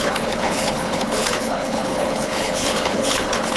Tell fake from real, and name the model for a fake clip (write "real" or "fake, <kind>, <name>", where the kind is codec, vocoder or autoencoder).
fake, codec, HILCodec